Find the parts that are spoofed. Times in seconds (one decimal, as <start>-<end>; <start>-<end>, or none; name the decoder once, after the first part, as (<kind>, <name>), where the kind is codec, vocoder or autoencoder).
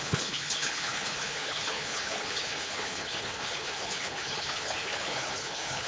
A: 0.0-5.9 (codec, HILCodec)